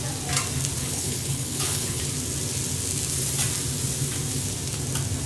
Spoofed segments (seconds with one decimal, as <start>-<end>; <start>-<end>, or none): 0.8-2.0